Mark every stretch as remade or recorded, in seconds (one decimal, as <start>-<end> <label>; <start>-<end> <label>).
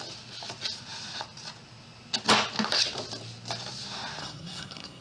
0.0-4.2 recorded; 4.2-5.0 remade